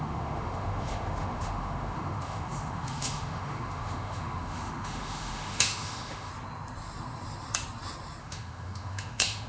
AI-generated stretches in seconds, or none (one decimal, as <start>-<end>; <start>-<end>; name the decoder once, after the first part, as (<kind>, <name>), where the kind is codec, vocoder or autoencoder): 0.0-6.3 (autoencoder, DAC-VAE); 8.2-9.5